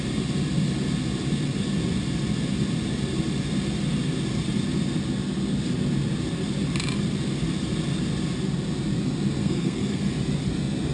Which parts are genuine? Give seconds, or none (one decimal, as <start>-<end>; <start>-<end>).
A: 0.0-9.4; 10.0-10.9